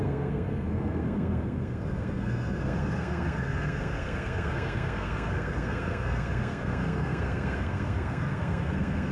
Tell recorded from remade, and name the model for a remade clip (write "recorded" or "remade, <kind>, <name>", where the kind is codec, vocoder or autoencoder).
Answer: remade, codec, SNAC